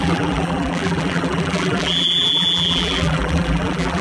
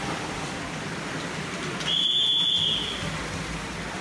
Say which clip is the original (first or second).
second